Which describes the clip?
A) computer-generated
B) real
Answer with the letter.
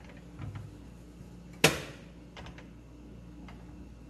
B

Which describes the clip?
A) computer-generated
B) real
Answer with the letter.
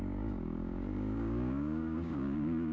A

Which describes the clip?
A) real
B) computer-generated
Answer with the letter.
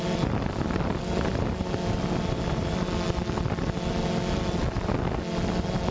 A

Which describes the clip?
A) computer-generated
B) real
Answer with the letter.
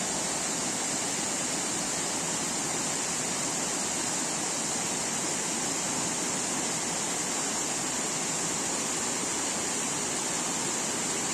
B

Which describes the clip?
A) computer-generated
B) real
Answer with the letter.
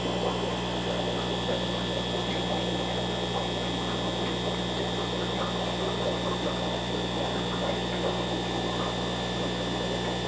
B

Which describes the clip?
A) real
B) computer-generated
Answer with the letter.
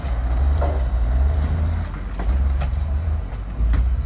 B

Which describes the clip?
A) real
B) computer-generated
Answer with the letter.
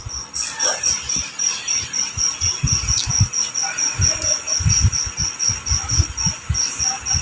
A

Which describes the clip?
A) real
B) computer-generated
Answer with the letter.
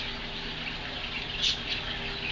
A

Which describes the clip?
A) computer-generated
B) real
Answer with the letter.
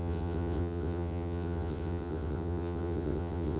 A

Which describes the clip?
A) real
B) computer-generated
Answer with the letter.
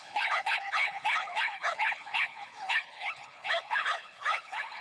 B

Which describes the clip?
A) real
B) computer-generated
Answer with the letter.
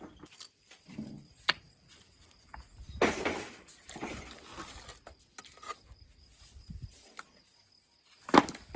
A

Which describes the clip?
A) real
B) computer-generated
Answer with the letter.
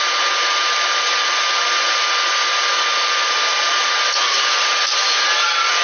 A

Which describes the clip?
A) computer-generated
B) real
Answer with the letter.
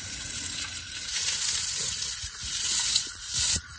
A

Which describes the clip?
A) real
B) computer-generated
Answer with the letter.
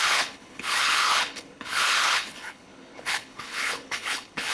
B